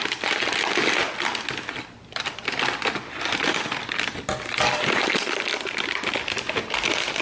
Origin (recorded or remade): recorded